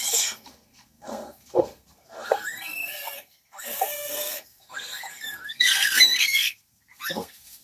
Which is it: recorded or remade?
remade